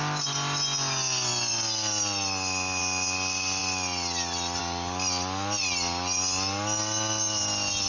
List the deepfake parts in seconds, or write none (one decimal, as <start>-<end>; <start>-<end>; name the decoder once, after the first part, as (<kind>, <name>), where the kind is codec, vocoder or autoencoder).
none